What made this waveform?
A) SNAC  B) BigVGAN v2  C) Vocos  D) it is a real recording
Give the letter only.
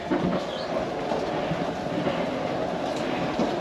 D